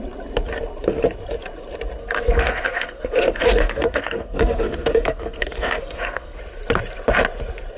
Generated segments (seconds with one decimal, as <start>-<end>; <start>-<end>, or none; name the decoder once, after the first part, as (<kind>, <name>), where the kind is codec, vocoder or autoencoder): 2.0-6.4 (codec, SNAC)